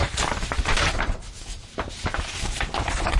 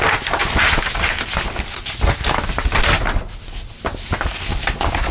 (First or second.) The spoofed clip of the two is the first